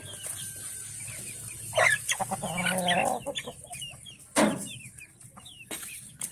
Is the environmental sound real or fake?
real